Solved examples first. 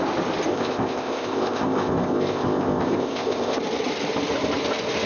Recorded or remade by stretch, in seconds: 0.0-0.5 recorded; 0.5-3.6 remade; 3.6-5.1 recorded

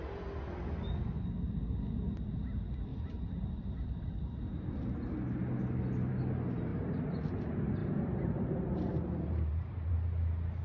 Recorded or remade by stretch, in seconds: 0.0-2.9 recorded; 2.9-3.5 remade; 3.5-7.8 recorded; 7.8-9.9 remade; 9.9-10.6 recorded